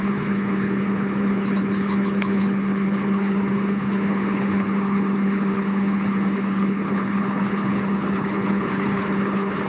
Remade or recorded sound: remade